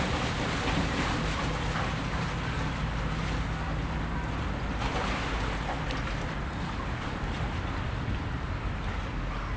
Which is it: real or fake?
real